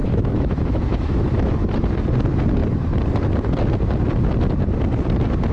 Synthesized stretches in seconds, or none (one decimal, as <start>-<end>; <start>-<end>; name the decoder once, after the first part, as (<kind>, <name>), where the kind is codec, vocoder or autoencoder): 0.0-1.5 (autoencoder, DAC-VAE)